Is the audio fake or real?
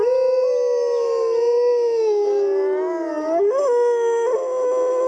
real